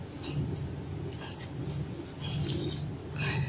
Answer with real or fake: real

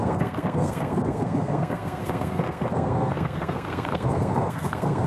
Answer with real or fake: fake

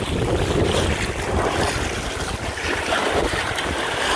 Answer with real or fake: real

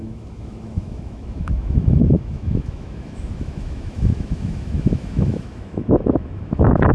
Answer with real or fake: fake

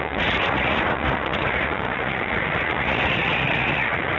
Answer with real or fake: fake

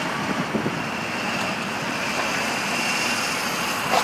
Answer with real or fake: real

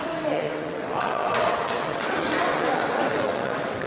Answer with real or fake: fake